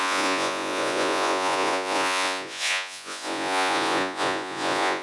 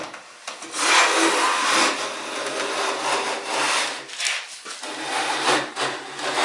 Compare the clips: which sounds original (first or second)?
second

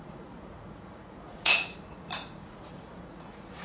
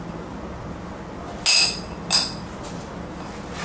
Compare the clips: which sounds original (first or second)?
second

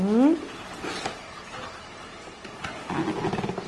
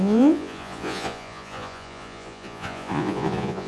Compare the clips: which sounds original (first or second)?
first